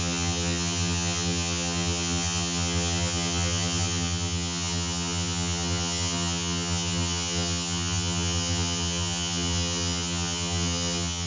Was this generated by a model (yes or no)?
yes